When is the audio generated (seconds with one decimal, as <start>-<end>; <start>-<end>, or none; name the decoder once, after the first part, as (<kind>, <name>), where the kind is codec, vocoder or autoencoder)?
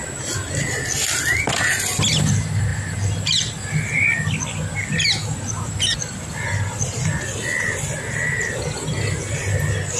none